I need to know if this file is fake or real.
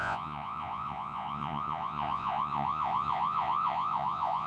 fake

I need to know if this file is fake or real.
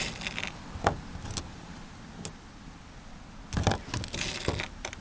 real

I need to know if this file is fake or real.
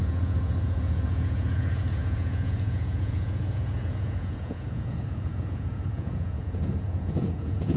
fake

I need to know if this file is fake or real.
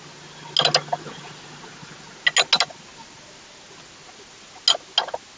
real